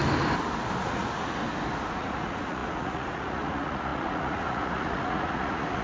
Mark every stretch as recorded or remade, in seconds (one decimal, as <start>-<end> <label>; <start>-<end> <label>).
0.0-0.8 recorded; 0.8-1.4 remade; 1.4-1.9 recorded; 1.9-5.8 remade